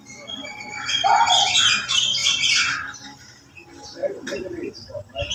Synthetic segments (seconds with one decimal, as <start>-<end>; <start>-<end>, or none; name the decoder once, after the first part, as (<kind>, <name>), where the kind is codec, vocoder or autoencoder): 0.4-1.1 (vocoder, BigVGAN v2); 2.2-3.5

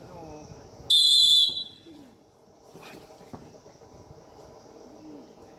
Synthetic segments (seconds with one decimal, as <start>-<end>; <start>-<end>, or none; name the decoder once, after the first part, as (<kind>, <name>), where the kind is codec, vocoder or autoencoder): none

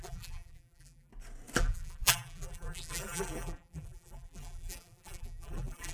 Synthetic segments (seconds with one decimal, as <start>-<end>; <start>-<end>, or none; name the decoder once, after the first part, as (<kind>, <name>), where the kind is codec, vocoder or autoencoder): 0.0-1.1 (vocoder, BigVGAN v2); 1.6-5.9